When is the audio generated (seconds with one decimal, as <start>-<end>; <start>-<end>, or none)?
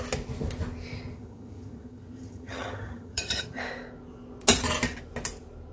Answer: 1.1-3.6